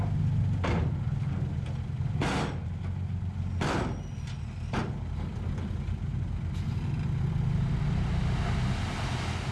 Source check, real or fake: real